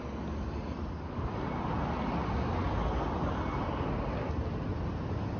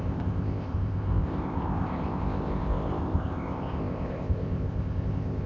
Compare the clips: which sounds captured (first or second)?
first